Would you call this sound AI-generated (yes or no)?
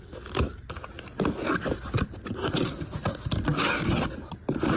no